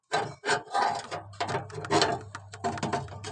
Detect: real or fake real